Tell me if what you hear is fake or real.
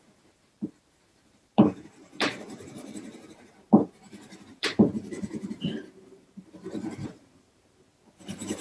fake